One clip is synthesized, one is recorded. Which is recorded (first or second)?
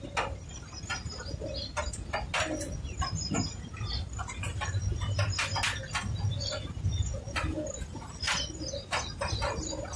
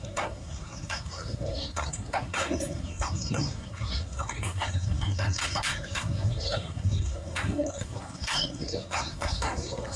first